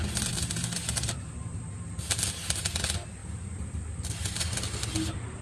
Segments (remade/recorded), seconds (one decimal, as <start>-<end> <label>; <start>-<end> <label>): 0.0-3.2 recorded; 3.2-4.4 remade; 4.4-5.4 recorded